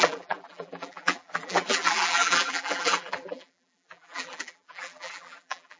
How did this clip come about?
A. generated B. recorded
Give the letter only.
A